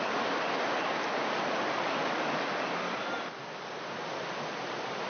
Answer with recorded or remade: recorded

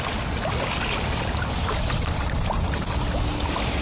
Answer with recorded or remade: recorded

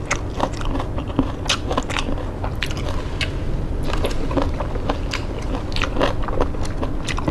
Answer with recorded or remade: recorded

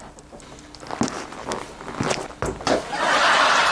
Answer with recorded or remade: recorded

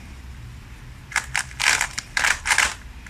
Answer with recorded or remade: recorded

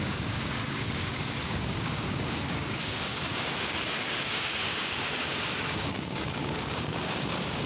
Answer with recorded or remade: remade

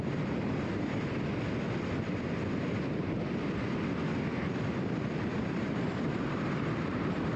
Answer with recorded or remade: remade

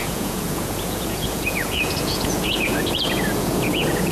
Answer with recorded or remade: remade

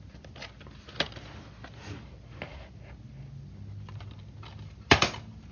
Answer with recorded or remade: recorded